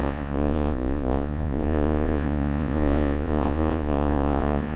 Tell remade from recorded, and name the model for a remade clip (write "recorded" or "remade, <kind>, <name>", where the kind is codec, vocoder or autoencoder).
remade, vocoder, Vocos